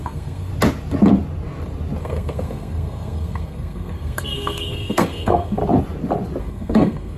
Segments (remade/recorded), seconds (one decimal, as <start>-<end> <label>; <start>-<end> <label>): 0.0-0.5 remade; 0.5-2.0 recorded; 2.0-5.6 remade; 5.6-6.4 recorded; 6.4-7.2 remade